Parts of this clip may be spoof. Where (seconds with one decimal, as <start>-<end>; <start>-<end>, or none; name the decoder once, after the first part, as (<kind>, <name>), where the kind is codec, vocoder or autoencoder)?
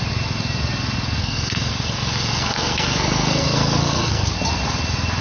1.2-4.3 (codec, SNAC)